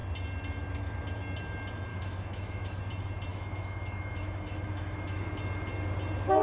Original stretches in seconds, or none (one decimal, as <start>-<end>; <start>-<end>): 0.0-1.9; 2.8-3.3; 5.2-6.4